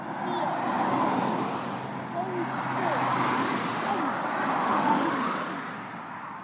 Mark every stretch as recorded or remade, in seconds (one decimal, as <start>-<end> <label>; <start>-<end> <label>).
0.0-4.6 recorded; 4.6-5.4 remade; 5.4-6.4 recorded